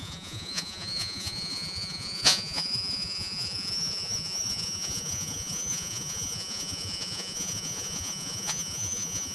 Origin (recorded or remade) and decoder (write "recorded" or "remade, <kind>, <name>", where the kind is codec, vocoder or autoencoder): remade, vocoder, Vocos